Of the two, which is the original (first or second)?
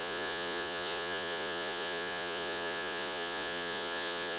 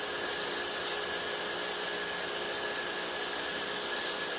second